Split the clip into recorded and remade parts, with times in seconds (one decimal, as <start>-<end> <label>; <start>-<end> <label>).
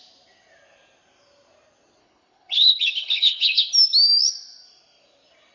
0.0-2.0 recorded; 2.0-3.7 remade; 3.7-5.5 recorded